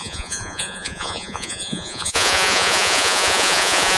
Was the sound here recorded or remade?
remade